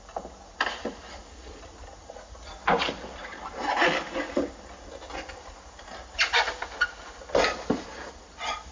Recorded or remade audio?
recorded